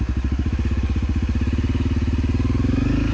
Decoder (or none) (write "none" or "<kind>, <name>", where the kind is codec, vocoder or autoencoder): none